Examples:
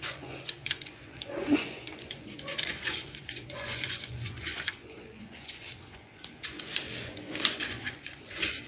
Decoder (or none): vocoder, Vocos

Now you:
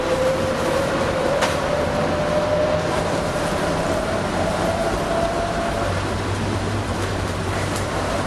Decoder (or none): vocoder, BigVGAN v2